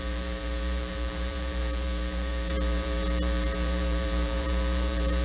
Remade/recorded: remade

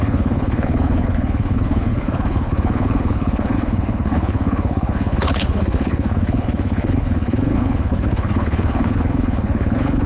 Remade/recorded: remade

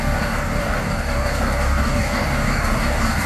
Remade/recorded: remade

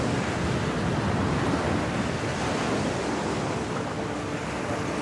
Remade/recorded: recorded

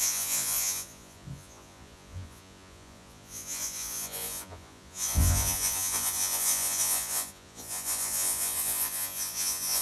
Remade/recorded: remade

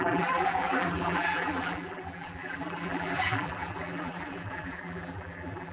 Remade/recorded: remade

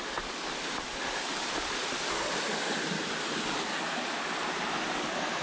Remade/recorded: recorded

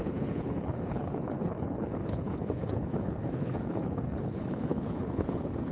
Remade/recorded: remade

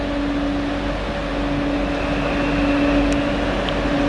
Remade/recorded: recorded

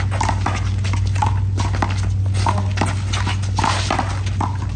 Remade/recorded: recorded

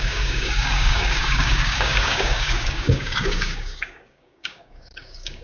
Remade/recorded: remade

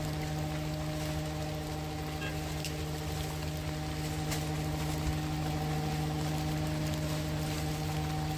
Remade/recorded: recorded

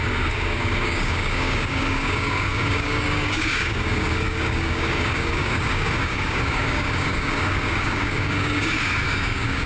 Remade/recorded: remade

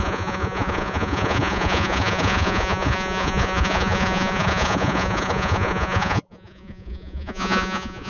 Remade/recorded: remade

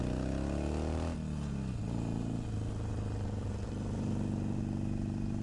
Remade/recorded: recorded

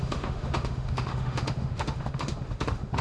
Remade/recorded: remade